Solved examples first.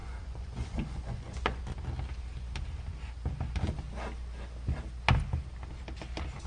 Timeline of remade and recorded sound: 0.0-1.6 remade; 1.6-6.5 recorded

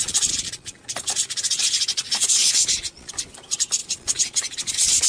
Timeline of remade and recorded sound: 0.0-3.1 remade; 3.1-3.8 recorded; 3.8-5.1 remade

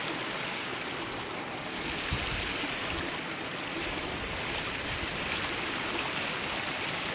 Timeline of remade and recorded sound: 0.0-7.1 recorded